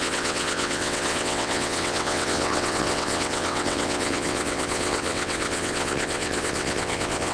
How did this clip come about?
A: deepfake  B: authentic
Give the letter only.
A